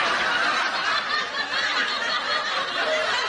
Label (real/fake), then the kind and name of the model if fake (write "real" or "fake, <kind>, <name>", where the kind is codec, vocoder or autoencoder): real